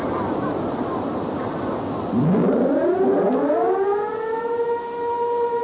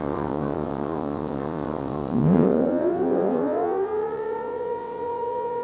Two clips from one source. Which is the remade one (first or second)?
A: second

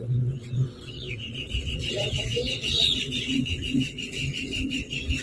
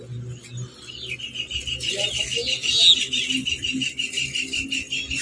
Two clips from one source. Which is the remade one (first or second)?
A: first